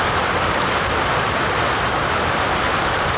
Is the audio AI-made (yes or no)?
no